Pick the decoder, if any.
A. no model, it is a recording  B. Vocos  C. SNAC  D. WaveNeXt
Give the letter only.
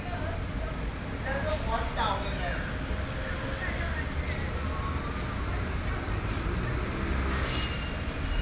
A